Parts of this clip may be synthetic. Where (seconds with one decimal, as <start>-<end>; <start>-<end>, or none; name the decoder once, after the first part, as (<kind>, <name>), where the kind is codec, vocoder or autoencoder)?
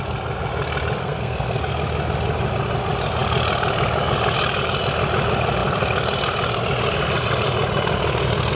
1.0-1.6 (codec, SNAC)